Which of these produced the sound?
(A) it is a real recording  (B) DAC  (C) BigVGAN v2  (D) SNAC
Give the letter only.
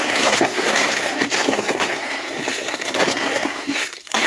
D